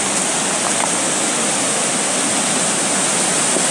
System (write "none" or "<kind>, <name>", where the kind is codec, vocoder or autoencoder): none